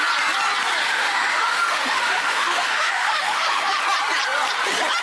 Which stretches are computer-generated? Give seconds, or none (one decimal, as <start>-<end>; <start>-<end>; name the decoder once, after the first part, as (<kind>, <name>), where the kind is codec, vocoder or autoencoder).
0.8-3.8 (autoencoder, DAC-VAE)